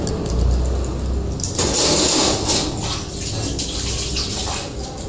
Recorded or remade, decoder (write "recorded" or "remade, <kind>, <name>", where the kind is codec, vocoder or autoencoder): recorded